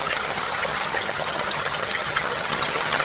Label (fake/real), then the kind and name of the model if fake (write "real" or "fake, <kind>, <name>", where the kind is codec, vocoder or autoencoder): fake, vocoder, HiFi-GAN